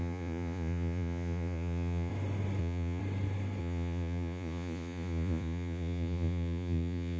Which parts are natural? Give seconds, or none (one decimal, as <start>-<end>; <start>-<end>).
2.1-2.6; 3.0-3.6